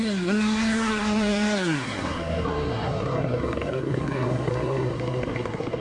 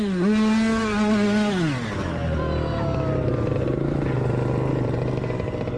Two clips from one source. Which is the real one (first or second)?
second